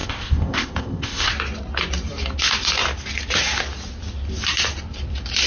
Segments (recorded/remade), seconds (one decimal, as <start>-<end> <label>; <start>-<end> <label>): 0.0-1.3 remade; 1.3-5.5 recorded